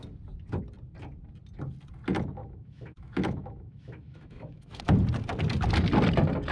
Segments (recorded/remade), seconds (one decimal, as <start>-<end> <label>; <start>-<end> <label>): 0.0-2.4 recorded; 2.4-4.8 remade; 4.8-6.5 recorded